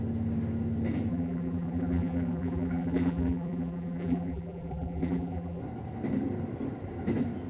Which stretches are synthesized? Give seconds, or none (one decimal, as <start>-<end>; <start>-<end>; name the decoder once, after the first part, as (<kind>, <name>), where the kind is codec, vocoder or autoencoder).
1.1-5.6 (vocoder, BigVGAN v2)